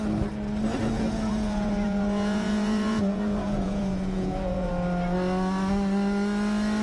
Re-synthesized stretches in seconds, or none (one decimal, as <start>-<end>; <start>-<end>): 0.8-4.7